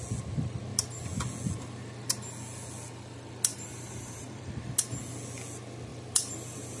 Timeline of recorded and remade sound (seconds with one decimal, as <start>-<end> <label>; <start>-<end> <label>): 0.0-3.5 recorded; 3.5-4.5 remade; 4.5-5.9 recorded; 5.9-6.8 remade